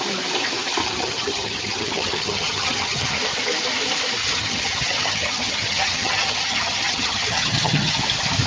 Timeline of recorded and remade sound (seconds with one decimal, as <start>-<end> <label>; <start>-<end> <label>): 0.0-0.8 recorded; 0.8-3.2 remade; 3.2-4.2 recorded; 4.2-8.0 remade; 8.0-8.5 recorded